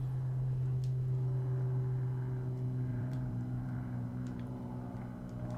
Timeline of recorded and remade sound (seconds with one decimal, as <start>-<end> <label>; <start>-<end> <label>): 0.0-2.9 recorded; 2.9-5.0 remade; 5.0-5.6 recorded